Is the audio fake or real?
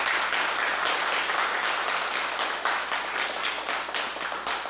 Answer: real